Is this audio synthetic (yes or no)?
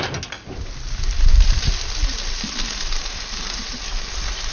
no